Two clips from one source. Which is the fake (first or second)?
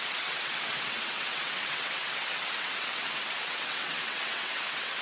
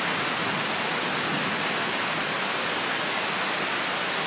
first